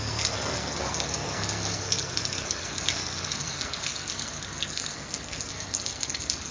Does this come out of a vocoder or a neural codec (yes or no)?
yes